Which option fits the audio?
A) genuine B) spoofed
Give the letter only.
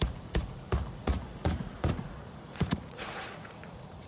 B